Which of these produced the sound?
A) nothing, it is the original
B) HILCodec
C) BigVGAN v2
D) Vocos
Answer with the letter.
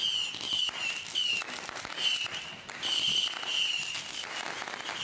A